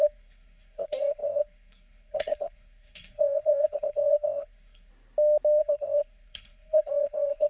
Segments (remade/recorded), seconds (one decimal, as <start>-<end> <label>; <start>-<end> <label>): 0.0-4.9 remade; 4.9-5.6 recorded; 5.6-7.5 remade